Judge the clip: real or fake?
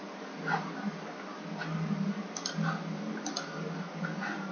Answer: real